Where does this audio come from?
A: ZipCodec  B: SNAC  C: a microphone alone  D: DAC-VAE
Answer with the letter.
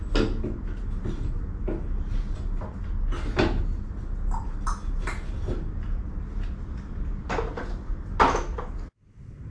C